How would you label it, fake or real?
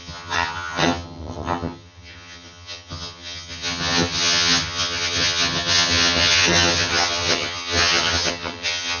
fake